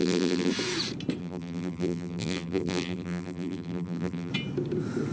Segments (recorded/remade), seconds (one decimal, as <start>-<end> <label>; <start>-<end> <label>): 0.0-0.5 remade; 0.5-1.2 recorded; 1.2-4.3 remade; 4.3-5.1 recorded

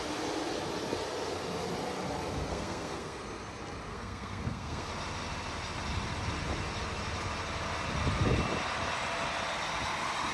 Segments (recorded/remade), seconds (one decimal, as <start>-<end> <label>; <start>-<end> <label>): 0.0-2.5 recorded; 2.5-3.2 remade; 3.2-3.9 recorded; 3.9-4.9 remade; 4.9-10.3 recorded

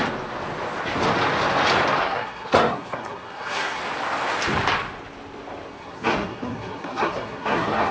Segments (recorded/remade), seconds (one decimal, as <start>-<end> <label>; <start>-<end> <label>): 0.0-2.0 recorded; 2.0-3.8 remade; 3.8-5.8 recorded; 5.8-7.9 remade

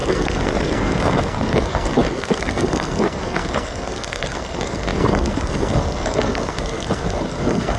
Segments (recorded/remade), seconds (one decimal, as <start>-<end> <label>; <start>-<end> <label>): 0.0-7.8 remade

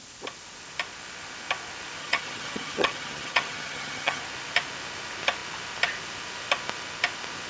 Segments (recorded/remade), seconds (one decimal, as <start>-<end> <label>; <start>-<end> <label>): 0.0-2.0 recorded; 2.0-4.2 remade; 4.2-7.5 recorded

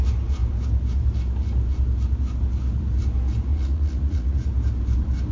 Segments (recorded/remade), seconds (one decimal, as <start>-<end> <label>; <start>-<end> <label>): 0.0-3.5 recorded; 3.5-4.5 remade; 4.5-5.3 recorded